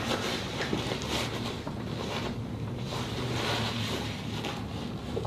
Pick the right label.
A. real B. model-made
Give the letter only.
A